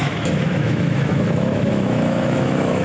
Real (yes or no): no